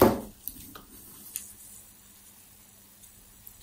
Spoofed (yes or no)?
no